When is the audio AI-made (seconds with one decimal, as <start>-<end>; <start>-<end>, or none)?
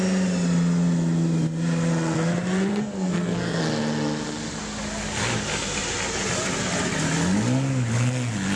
2.7-3.6